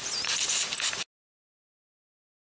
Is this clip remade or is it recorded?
recorded